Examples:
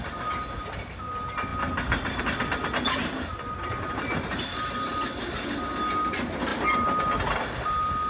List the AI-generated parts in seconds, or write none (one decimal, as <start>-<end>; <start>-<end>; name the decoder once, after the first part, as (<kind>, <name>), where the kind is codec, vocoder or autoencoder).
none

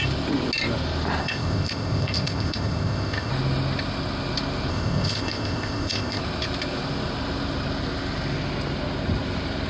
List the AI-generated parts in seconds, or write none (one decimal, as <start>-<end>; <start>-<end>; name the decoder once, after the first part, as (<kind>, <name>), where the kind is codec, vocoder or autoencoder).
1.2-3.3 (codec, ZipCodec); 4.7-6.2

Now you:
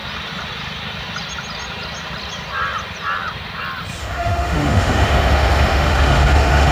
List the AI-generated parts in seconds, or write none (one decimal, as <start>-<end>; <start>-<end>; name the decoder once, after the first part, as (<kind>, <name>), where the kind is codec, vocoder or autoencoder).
4.0-6.7 (autoencoder, DAC-VAE)

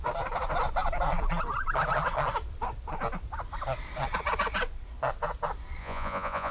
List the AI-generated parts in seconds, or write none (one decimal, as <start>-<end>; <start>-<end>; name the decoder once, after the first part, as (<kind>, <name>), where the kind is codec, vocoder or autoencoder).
5.8-6.5 (vocoder, Vocos)

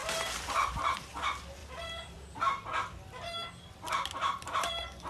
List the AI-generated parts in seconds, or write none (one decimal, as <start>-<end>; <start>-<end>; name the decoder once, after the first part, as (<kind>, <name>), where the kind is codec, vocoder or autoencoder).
1.6-2.4 (vocoder, BigVGAN v2)

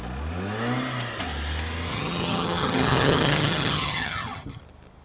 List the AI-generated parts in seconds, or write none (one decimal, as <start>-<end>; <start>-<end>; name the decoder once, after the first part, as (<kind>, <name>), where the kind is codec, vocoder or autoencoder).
1.9-4.6 (vocoder, HiFi-GAN)

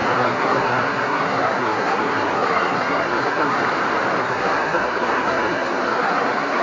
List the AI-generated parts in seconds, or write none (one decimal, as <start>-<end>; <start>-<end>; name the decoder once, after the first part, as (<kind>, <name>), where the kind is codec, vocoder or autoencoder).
0.0-3.6 (codec, SNAC); 4.2-6.6

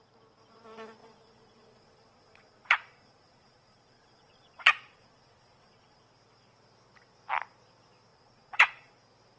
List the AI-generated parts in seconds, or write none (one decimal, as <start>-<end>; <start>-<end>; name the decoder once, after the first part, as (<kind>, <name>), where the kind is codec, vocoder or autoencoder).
1.0-6.0 (vocoder, Vocos); 8.1-8.9